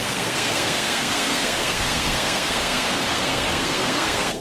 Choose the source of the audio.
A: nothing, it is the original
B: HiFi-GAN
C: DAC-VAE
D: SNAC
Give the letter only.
D